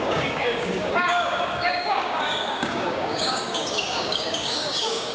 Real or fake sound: fake